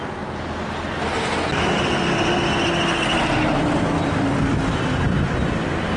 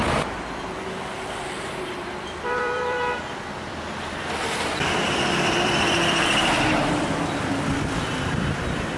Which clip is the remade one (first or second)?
second